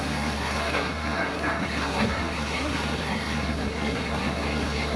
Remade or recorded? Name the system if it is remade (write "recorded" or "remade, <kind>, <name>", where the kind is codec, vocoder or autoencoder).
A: remade, codec, SNAC